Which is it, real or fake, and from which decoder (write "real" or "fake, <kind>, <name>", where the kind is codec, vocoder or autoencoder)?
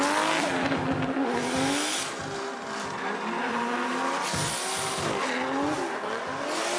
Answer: real